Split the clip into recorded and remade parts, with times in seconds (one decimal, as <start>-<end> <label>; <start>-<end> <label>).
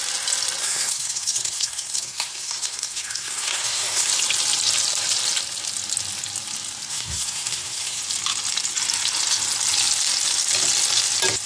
0.0-0.6 recorded; 0.6-4.1 remade; 4.1-6.9 recorded; 6.9-8.0 remade; 8.0-11.5 recorded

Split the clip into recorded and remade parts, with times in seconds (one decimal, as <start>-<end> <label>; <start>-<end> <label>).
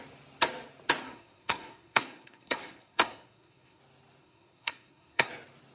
0.0-1.0 recorded; 1.0-3.8 remade; 3.8-4.2 recorded; 4.2-5.3 remade; 5.3-5.7 recorded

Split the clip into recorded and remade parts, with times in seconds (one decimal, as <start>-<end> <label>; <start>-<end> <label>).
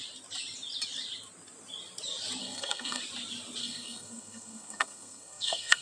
0.0-2.4 recorded; 2.4-3.0 remade; 3.0-3.6 recorded; 3.6-5.8 remade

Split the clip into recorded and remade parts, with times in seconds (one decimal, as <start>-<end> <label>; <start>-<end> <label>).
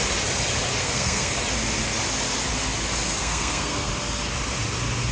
0.0-0.8 recorded; 0.8-1.3 remade; 1.3-3.2 recorded; 3.2-3.9 remade; 3.9-5.1 recorded